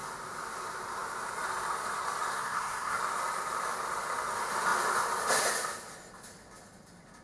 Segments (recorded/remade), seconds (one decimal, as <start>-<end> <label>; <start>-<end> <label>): 0.0-2.3 recorded; 2.3-3.0 remade; 3.0-7.2 recorded

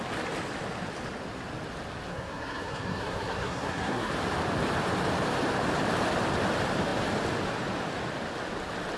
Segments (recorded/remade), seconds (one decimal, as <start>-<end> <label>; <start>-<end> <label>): 0.0-2.1 recorded; 2.1-4.1 remade; 4.1-9.0 recorded

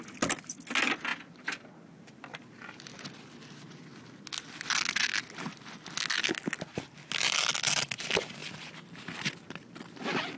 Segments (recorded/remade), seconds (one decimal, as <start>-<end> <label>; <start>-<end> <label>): 0.0-10.4 recorded

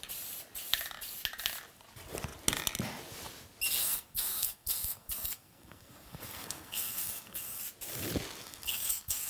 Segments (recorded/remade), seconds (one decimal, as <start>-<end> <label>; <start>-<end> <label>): 0.0-3.8 recorded; 3.8-7.6 remade; 7.6-8.4 recorded; 8.4-9.3 remade

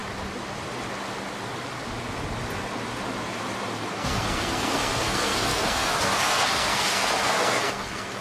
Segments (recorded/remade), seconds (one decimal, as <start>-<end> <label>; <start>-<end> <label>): 0.0-3.9 recorded; 3.9-8.2 remade

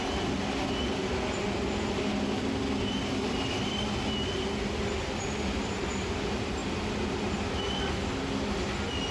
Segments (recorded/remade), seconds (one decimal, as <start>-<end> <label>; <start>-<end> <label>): 0.0-9.1 recorded

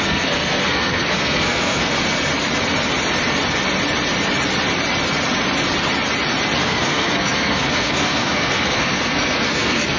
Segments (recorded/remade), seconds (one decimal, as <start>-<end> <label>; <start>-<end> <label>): 0.0-1.9 remade; 1.9-6.6 recorded; 6.6-10.0 remade